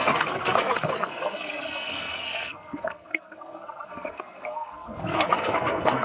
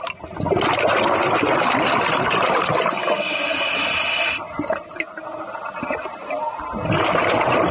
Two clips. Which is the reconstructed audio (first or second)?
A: first